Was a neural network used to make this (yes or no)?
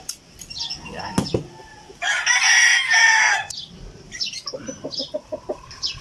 no